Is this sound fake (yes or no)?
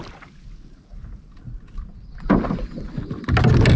no